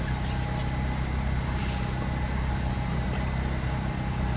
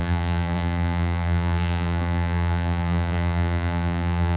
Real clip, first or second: first